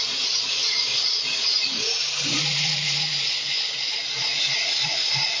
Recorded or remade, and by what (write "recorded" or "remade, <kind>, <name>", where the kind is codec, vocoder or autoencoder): remade, vocoder, Vocos